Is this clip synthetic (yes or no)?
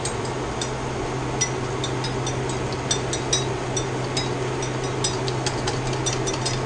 no